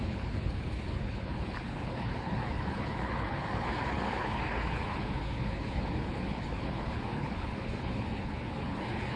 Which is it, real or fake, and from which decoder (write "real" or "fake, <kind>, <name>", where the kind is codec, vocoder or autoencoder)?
fake, codec, HILCodec